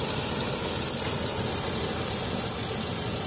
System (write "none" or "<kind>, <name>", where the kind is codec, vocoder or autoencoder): none